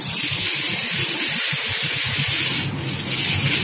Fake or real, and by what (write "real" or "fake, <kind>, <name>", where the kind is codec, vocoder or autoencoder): real